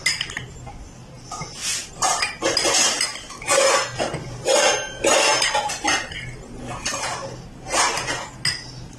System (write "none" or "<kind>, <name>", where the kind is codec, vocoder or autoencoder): none